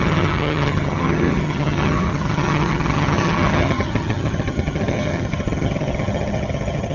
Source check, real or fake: fake